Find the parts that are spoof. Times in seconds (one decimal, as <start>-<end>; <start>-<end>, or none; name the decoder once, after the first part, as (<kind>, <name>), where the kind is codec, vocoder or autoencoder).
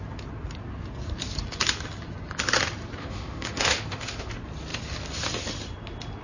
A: 3.0-4.3 (autoencoder, DAC-VAE)